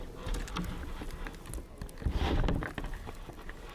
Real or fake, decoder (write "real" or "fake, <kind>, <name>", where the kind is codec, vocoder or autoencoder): real